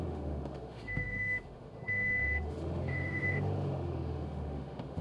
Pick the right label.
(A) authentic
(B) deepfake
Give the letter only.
B